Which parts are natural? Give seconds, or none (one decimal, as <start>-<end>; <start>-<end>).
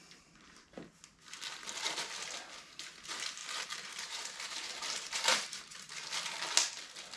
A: 1.0-3.4; 5.6-7.2